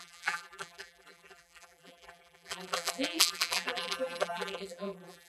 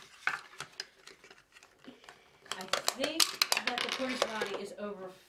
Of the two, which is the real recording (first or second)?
second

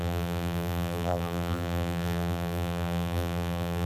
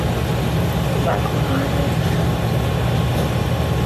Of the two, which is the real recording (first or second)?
second